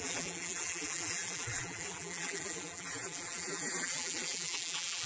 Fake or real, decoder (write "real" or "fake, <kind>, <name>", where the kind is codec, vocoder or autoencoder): fake, vocoder, BigVGAN v2